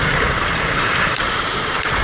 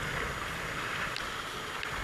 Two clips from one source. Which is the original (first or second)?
second